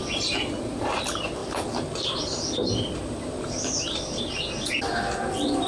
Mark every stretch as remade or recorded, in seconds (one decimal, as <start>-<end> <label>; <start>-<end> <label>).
0.0-5.7 recorded